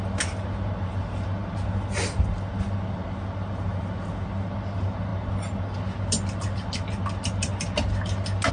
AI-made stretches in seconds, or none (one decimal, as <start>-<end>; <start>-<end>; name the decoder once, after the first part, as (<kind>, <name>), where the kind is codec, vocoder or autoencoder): none